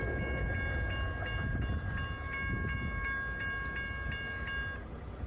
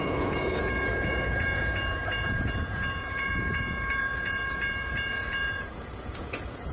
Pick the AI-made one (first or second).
second